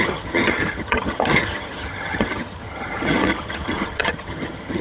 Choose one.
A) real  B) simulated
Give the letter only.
B